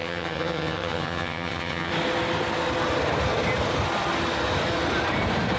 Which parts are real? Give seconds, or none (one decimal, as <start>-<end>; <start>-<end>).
1.9-5.6